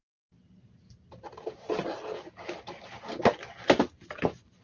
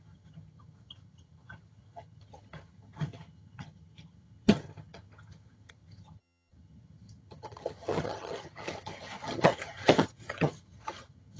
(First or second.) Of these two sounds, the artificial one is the second